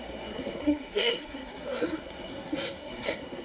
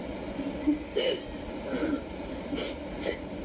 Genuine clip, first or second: second